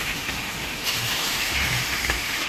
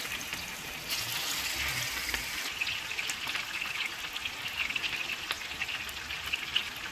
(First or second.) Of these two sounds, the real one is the second